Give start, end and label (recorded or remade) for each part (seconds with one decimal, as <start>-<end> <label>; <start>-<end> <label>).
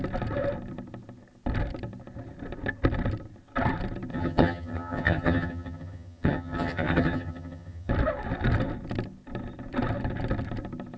0.0-4.1 recorded; 4.1-7.9 remade; 7.9-11.0 recorded